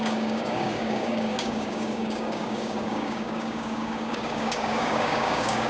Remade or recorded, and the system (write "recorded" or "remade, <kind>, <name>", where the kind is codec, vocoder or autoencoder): remade, codec, DAC